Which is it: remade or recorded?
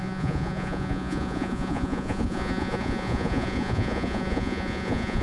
remade